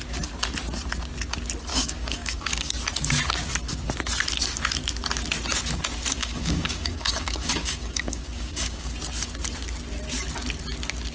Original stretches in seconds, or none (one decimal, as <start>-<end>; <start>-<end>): 0.0-1.7; 2.7-6.2; 8.9-11.1